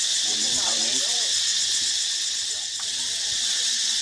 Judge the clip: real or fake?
fake